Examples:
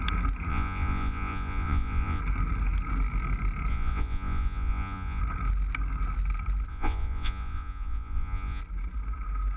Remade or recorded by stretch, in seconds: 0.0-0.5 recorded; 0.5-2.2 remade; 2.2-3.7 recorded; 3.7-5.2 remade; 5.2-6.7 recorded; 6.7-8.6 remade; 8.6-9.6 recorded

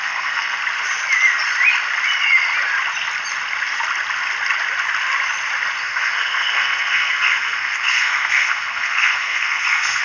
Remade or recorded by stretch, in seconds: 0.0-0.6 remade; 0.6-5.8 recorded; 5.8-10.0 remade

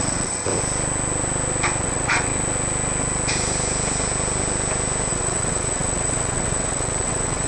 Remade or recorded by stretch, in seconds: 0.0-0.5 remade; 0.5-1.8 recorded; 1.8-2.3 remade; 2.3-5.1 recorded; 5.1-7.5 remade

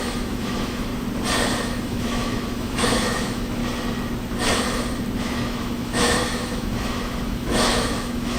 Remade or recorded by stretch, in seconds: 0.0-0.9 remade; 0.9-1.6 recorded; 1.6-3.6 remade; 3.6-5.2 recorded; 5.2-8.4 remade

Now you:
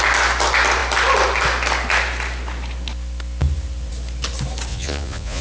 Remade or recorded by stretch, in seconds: 0.0-4.7 recorded; 4.7-5.4 remade

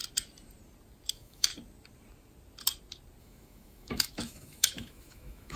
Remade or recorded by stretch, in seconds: 0.0-1.1 recorded; 1.1-1.5 remade; 1.5-3.2 recorded; 3.2-5.6 remade